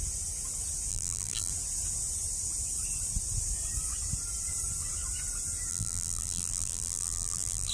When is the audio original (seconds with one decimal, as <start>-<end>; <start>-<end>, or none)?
0.0-0.9; 1.5-5.7